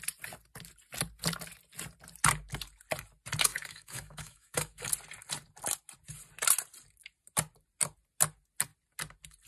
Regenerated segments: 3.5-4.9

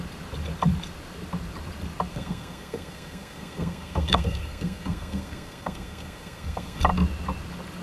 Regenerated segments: 2.1-6.8

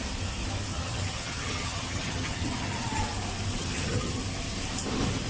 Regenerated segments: 0.7-3.0; 3.6-4.2

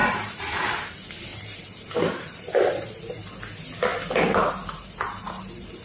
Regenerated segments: 0.0-0.9; 1.3-2.5

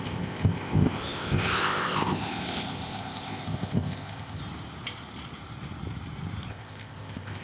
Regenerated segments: 0.0-4.4; 6.5-7.4